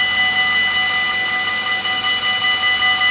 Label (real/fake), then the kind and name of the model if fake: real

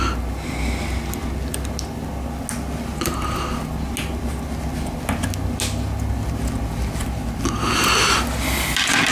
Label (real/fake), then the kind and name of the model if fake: real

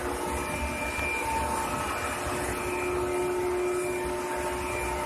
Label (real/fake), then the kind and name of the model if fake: real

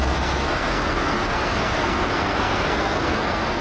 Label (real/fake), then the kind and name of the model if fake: fake, codec, SNAC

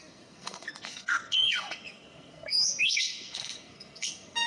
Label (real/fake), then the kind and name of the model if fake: fake, codec, SNAC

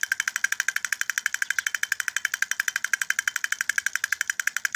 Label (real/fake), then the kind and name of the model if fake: real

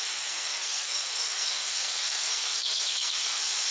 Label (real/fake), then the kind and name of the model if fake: fake, codec, SNAC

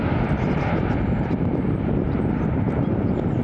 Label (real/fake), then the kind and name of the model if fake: real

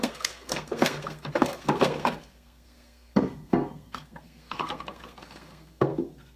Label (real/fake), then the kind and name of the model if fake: fake, codec, SNAC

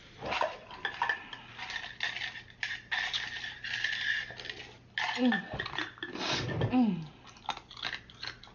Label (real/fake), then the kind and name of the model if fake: real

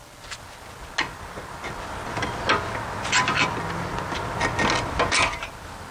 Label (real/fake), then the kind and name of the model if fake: real